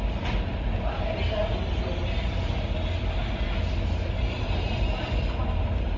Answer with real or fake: real